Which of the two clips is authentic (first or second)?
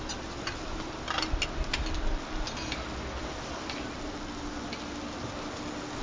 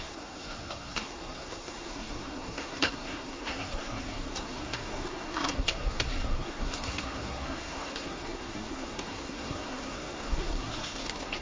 first